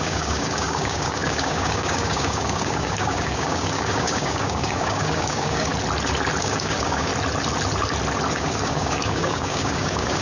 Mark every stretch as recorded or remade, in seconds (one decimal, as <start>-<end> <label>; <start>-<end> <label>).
0.0-5.7 remade; 5.7-6.4 recorded; 6.4-7.1 remade; 7.1-8.3 recorded; 8.3-10.2 remade